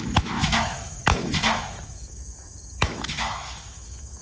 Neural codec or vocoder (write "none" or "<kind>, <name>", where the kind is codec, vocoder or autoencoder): autoencoder, DAC-VAE